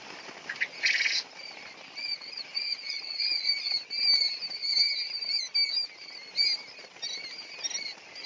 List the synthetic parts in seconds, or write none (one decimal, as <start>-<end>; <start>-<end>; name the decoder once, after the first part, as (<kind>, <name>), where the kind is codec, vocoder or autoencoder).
2.0-3.6 (vocoder, Vocos)